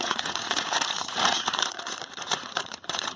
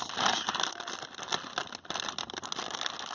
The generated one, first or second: first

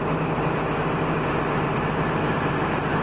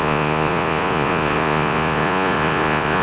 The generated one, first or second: second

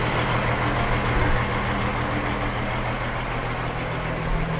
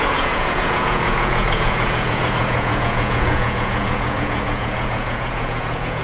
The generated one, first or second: second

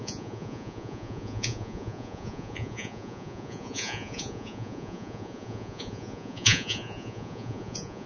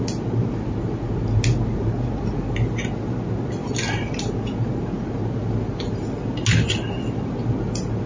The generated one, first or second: first